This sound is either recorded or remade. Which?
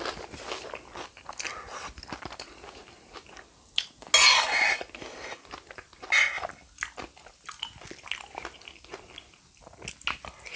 recorded